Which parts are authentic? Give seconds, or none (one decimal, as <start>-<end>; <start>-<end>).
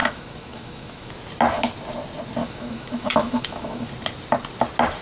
1.1-2.4; 3.9-5.0